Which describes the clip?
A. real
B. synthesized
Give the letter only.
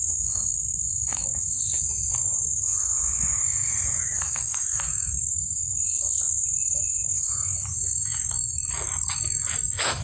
B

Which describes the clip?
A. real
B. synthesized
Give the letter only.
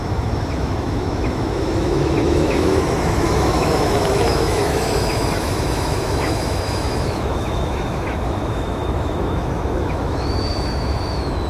B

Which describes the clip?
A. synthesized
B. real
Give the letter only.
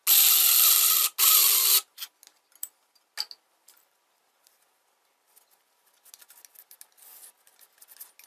B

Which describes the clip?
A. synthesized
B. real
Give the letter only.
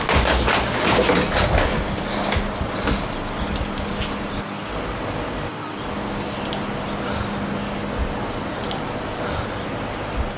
B